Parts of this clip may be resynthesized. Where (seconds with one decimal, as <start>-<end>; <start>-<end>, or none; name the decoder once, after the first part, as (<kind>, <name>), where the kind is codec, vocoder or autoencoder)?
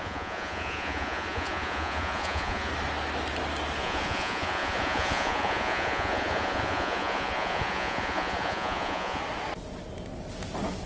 0.0-2.7 (vocoder, Vocos); 3.8-9.2